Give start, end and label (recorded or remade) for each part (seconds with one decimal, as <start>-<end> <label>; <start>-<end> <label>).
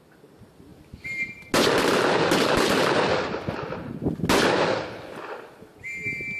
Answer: 0.0-6.4 recorded